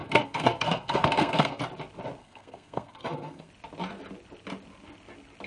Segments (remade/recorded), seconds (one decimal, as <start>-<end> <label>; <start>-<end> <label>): 0.0-1.6 remade; 1.6-2.2 recorded; 2.2-3.5 remade; 3.5-5.5 recorded